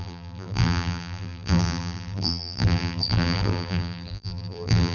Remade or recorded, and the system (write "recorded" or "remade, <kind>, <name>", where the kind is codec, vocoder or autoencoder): remade, vocoder, BigVGAN v2